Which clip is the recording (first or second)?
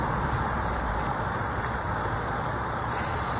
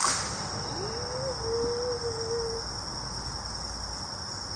second